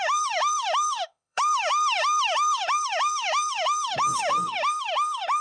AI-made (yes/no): yes